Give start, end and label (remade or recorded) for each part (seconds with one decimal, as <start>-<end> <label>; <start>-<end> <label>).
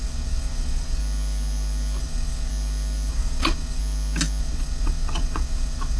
0.0-1.0 remade; 1.0-2.0 recorded; 2.0-2.5 remade; 2.5-3.1 recorded; 3.1-3.8 remade; 3.8-4.4 recorded; 4.4-6.0 remade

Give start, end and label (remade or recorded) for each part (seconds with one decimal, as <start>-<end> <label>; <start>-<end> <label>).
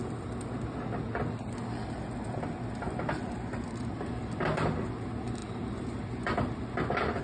0.0-7.2 recorded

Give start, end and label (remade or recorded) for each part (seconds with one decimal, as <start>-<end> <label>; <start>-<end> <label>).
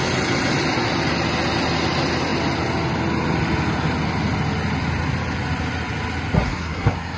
0.0-6.5 recorded; 6.5-7.2 remade